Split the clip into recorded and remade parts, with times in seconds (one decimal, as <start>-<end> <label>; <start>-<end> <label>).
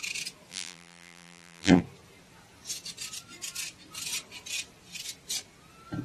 0.0-0.5 recorded; 0.5-1.8 remade; 1.8-6.0 recorded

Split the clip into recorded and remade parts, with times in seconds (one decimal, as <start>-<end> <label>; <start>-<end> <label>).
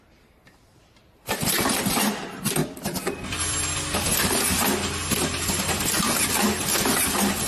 0.0-2.6 remade; 2.6-7.1 recorded; 7.1-7.5 remade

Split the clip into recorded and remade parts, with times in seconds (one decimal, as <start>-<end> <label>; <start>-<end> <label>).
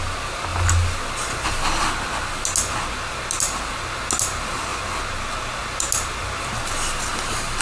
0.0-7.6 recorded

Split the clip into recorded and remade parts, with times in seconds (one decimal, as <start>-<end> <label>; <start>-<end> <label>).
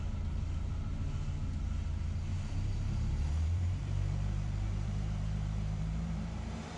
0.0-2.3 recorded; 2.3-6.8 remade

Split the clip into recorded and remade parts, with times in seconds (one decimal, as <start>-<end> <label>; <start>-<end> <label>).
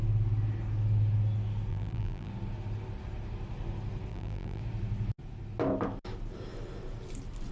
0.0-1.7 recorded; 1.7-2.3 remade; 2.3-4.1 recorded; 4.1-4.6 remade; 4.6-7.5 recorded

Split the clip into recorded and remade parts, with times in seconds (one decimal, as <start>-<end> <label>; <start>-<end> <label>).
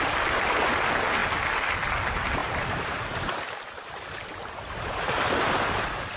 0.0-2.4 recorded; 2.4-3.0 remade; 3.0-6.2 recorded